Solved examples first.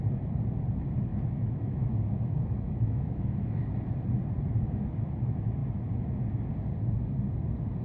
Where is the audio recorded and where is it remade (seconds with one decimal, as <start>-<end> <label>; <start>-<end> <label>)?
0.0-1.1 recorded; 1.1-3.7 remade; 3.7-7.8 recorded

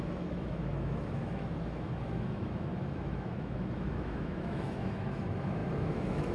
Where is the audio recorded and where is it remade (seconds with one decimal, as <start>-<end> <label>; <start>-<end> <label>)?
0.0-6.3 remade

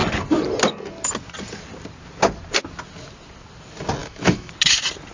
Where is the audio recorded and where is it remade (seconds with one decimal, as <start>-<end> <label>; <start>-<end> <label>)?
0.0-4.0 recorded; 4.0-4.5 remade; 4.5-5.1 recorded